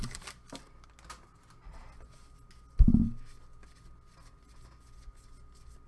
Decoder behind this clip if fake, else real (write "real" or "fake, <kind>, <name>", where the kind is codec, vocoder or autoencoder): real